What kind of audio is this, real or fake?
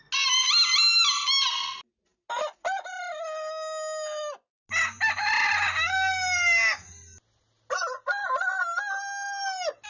real